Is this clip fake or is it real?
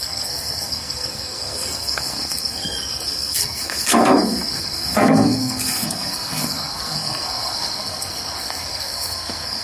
fake